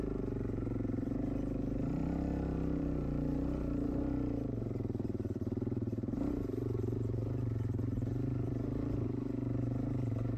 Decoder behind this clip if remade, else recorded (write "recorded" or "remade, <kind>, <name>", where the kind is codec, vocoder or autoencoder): remade, vocoder, BigVGAN v2